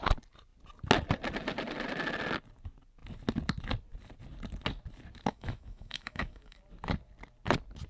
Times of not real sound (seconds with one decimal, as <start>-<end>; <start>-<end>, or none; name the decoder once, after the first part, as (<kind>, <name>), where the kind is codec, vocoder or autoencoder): 5.3-6.6 (autoencoder, DAC-VAE)